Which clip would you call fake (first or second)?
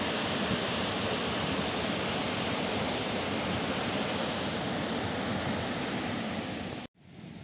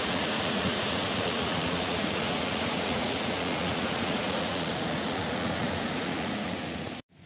second